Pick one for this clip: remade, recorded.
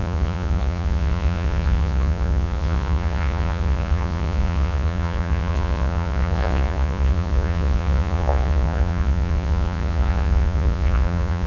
remade